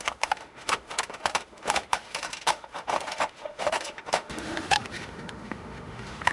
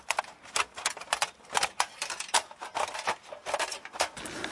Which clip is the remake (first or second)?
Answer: first